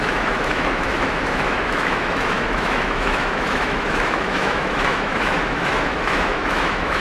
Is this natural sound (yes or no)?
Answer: no